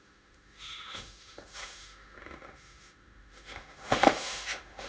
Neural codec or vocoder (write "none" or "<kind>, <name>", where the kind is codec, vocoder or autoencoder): autoencoder, DAC-VAE